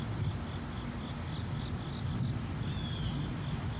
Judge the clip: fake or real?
real